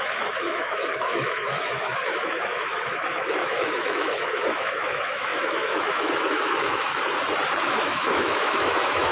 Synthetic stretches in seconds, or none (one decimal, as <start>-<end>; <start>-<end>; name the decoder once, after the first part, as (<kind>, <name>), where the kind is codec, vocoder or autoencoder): 0.0-6.9 (autoencoder, DAC-VAE); 7.6-9.1